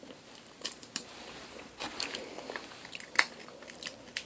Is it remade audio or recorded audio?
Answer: remade